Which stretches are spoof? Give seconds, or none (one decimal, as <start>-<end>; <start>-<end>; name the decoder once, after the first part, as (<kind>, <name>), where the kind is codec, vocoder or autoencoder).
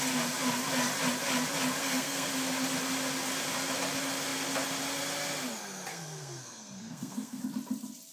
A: 1.8-2.3 (codec, SNAC); 5.9-7.4